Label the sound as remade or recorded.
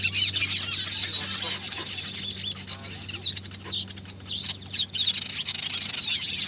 recorded